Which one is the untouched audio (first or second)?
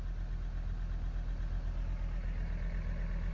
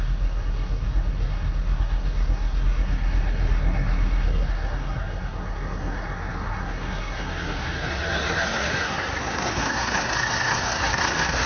first